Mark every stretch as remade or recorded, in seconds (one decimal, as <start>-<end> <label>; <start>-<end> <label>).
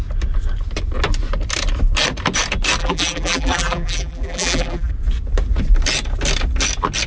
0.0-2.8 recorded; 2.8-4.9 remade; 4.9-7.1 recorded